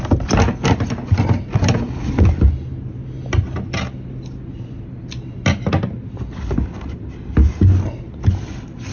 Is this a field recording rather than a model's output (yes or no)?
yes